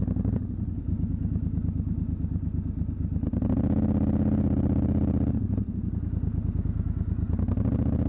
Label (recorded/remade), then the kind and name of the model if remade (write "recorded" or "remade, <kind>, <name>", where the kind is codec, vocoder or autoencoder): recorded